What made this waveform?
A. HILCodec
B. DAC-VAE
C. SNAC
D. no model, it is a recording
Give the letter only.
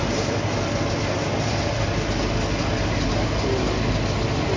D